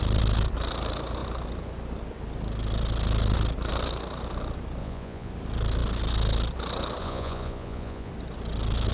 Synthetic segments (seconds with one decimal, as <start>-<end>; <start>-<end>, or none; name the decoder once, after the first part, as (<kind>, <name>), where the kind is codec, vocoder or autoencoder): 4.8-5.3 (vocoder, Vocos); 7.0-8.1